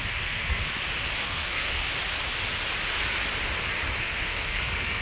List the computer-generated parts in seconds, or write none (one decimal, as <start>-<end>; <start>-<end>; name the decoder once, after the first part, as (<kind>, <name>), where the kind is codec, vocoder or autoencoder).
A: 0.0-0.6 (codec, SNAC); 1.2-1.8; 4.0-5.0